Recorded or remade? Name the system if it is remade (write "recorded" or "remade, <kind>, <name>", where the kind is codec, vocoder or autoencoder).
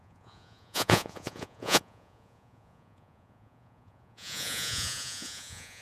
remade, vocoder, Vocos